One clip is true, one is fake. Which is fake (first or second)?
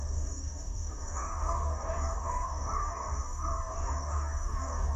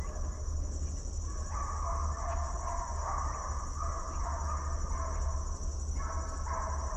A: first